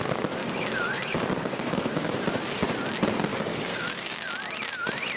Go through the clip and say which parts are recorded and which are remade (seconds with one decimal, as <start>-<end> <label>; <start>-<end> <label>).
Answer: 0.0-0.4 recorded; 0.4-2.1 remade; 2.1-3.3 recorded; 3.3-4.3 remade; 4.3-5.2 recorded